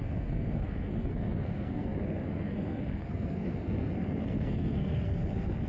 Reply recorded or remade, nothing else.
remade